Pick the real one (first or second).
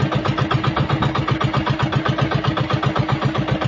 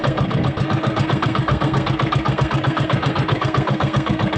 first